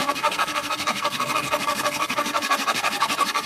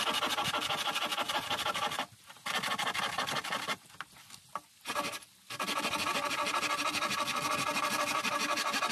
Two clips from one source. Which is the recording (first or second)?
second